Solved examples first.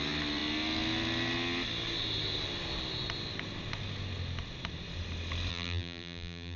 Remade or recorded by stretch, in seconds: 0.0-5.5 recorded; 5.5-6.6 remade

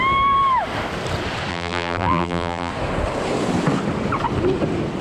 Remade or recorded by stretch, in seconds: 0.0-1.5 recorded; 1.5-2.7 remade; 2.7-5.0 recorded

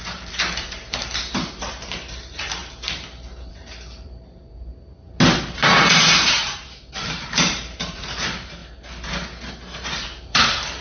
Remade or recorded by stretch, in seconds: 0.0-2.6 remade; 2.6-3.5 recorded; 3.5-4.7 remade; 4.7-5.4 recorded; 5.4-8.6 remade; 8.6-9.5 recorded; 9.5-10.8 remade

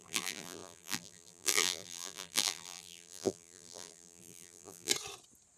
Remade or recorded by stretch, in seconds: 0.0-4.9 remade; 4.9-5.6 recorded

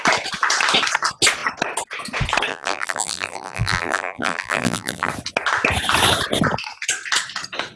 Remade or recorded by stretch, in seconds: 0.0-2.5 recorded; 2.5-5.1 remade; 5.1-7.8 recorded

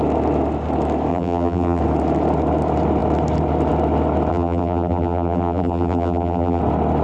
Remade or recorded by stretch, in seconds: 0.0-1.1 recorded; 1.1-1.8 remade; 1.8-4.3 recorded; 4.3-6.6 remade; 6.6-7.0 recorded

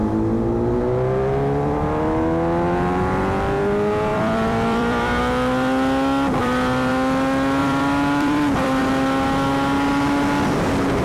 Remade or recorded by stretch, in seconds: 0.0-4.1 recorded; 4.1-5.2 remade; 5.2-6.4 recorded; 6.4-6.9 remade; 6.9-7.6 recorded; 7.6-8.8 remade; 8.8-11.0 recorded

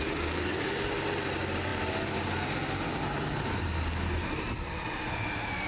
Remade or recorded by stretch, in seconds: 0.0-5.7 recorded